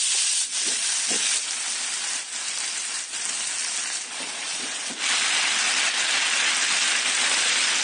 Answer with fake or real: real